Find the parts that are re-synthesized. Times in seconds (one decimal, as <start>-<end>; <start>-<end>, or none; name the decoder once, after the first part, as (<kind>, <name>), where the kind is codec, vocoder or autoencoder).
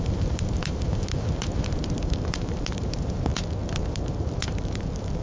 0.0-3.3 (vocoder, BigVGAN v2); 3.9-5.2